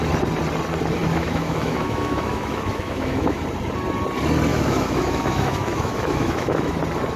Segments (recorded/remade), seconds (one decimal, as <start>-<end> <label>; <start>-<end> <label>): 0.0-1.0 recorded; 1.0-3.4 remade; 3.4-4.5 recorded; 4.5-6.8 remade; 6.8-7.2 recorded